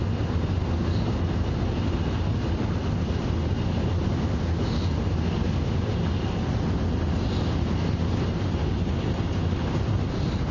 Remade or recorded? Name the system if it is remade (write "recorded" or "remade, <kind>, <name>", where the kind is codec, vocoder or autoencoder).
recorded